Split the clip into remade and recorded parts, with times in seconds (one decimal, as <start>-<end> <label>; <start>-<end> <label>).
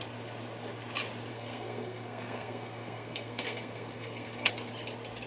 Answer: 0.0-1.3 recorded; 1.3-4.5 remade; 4.5-5.3 recorded